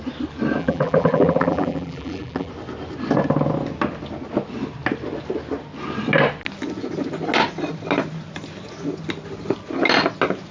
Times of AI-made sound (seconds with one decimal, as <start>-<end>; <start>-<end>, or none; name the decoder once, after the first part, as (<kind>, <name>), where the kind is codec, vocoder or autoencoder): 0.6-2.5 (vocoder, BigVGAN v2)

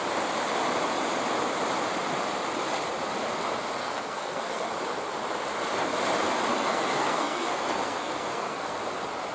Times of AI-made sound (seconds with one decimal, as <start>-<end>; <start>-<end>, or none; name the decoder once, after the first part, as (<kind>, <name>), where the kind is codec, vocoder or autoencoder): 3.8-4.7 (codec, SNAC); 6.5-8.8